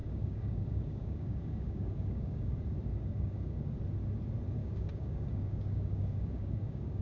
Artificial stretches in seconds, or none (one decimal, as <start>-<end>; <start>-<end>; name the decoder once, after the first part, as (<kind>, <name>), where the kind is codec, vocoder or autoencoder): 0.0-2.5 (codec, DAC); 2.9-3.7; 4.6-7.0